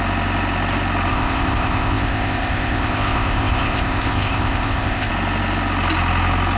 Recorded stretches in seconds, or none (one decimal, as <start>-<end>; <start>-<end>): 0.0-1.1; 5.1-6.6